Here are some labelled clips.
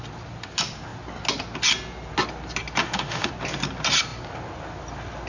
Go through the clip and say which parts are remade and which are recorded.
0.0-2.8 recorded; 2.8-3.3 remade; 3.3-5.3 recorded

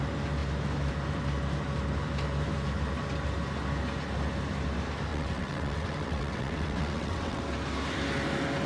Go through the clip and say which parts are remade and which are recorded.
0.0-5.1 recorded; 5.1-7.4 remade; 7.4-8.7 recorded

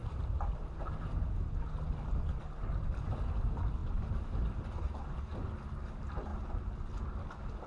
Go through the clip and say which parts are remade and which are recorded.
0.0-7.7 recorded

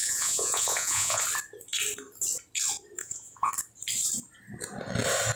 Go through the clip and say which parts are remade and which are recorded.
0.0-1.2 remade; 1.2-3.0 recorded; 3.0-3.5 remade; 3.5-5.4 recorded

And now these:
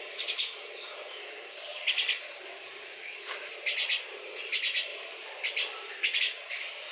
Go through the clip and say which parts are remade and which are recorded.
0.0-1.7 recorded; 1.7-2.5 remade; 2.5-4.9 recorded; 4.9-6.2 remade; 6.2-6.9 recorded